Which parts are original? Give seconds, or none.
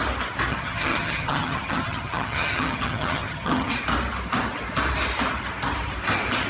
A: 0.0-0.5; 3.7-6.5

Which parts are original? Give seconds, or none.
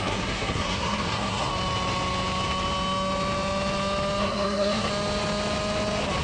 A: 1.5-4.2; 4.9-6.2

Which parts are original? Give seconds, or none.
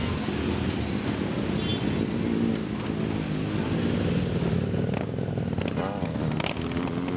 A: 0.0-7.2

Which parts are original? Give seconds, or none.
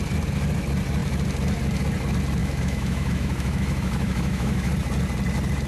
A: 0.0-2.4; 4.7-5.7